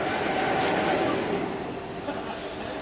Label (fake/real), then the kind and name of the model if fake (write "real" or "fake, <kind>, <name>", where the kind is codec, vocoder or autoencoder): real